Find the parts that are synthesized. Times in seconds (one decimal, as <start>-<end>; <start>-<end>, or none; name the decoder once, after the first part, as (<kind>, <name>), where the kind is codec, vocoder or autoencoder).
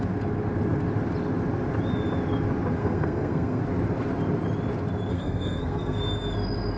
2.8-3.6 (codec, SNAC); 5.1-6.0